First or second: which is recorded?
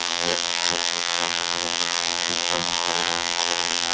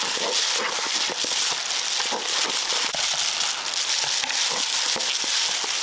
second